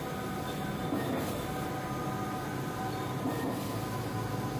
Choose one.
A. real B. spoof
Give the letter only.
A